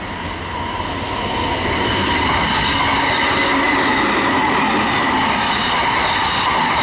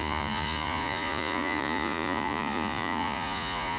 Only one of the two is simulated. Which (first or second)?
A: second